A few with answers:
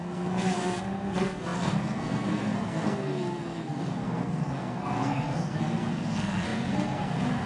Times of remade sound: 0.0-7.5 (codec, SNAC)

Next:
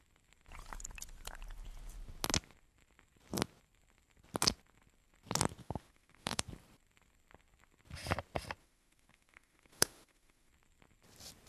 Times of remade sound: 5.6-6.4 (autoencoder, DAC-VAE); 8.6-10.5

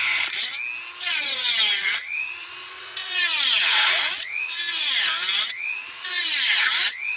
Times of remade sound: 0.0-0.5 (vocoder, Vocos); 1.0-7.2

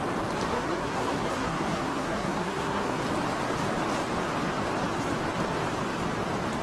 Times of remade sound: 0.5-3.0 (codec, SNAC)

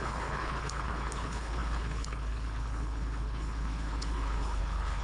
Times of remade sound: 0.0-5.0 (codec, HILCodec)

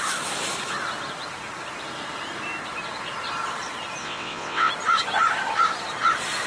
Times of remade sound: 4.0-4.7 (vocoder, WaveNeXt)